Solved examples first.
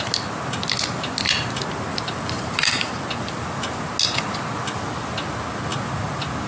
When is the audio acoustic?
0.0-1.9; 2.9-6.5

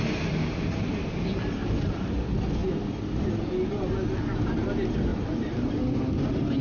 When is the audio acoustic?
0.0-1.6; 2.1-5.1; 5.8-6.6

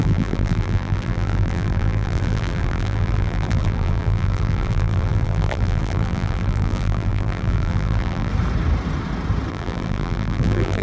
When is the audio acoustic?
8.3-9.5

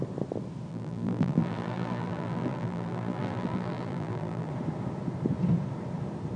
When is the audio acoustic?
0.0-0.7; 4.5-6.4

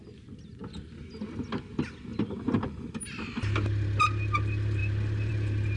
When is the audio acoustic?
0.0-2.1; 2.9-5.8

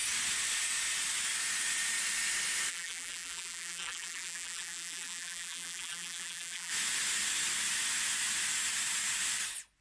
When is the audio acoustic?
0.0-2.7; 6.7-9.8

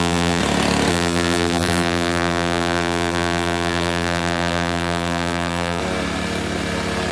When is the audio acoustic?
0.4-0.9; 5.8-7.1